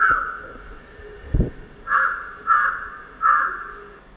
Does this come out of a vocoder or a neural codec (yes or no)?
no